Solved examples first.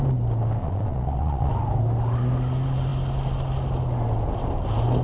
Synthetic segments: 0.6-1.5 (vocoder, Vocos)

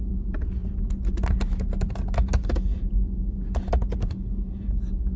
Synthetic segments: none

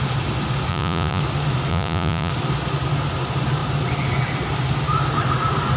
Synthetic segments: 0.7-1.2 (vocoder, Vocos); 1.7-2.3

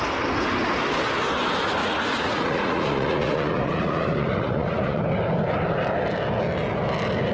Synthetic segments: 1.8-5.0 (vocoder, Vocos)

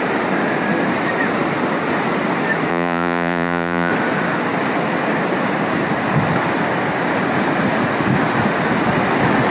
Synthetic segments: 2.7-3.9 (vocoder, Vocos)

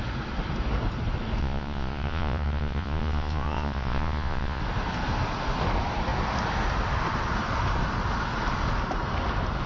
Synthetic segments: 1.4-4.6 (vocoder, Vocos)

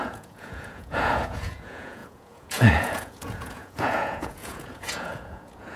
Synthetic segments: 0.0-5.8 (vocoder, Vocos)